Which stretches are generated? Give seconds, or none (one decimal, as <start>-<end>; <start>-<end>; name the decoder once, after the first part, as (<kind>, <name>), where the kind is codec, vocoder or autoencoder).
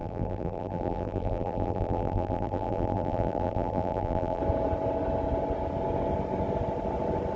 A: 0.0-4.4 (vocoder, BigVGAN v2)